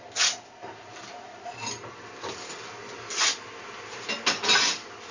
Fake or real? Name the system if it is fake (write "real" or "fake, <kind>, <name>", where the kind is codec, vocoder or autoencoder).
real